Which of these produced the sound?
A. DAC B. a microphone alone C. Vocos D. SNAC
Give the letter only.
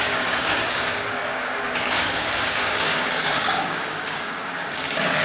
A